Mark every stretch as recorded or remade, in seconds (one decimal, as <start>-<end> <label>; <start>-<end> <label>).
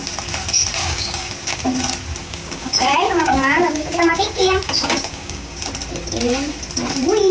0.0-0.8 recorded; 0.8-1.3 remade; 1.3-2.2 recorded; 2.2-5.6 remade; 5.6-7.3 recorded